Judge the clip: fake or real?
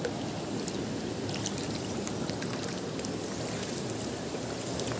real